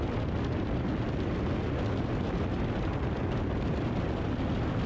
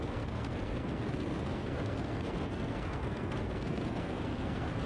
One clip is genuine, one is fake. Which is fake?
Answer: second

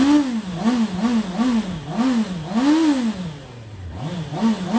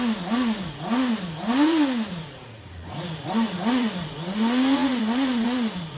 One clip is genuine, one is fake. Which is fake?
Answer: second